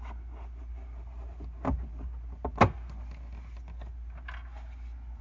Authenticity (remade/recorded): recorded